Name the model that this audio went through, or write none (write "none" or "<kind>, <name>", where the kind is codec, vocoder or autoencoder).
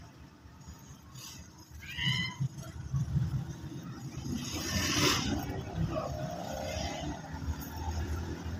none